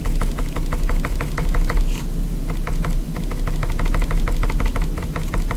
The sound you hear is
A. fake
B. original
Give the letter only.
B